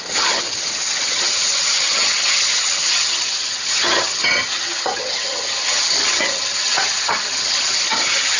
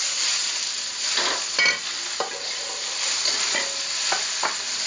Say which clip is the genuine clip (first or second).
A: second